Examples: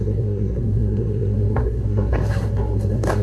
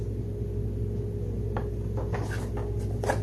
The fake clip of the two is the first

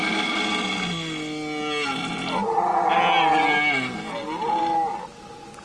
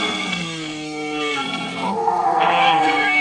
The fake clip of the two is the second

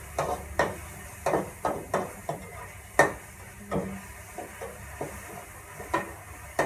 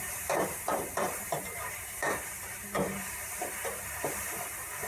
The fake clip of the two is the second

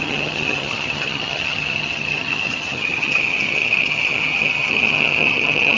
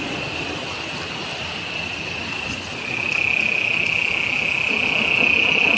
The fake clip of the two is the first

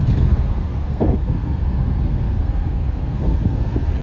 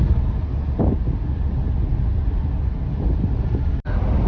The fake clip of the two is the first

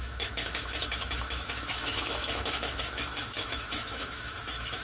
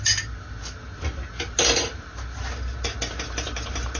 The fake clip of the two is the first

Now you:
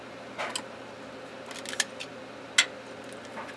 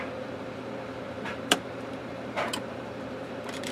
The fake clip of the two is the second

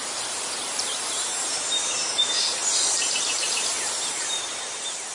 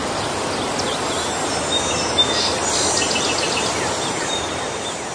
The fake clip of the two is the first